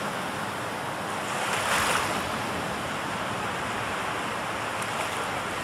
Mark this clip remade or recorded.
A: recorded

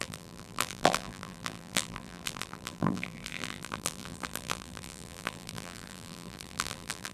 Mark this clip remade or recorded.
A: remade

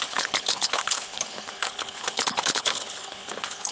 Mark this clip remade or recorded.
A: remade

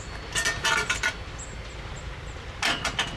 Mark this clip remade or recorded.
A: recorded